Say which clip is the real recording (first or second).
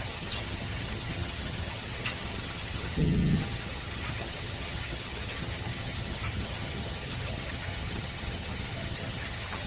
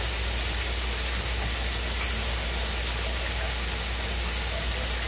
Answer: second